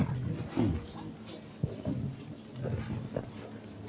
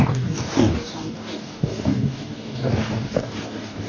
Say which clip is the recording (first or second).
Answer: first